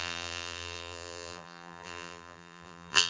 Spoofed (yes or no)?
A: yes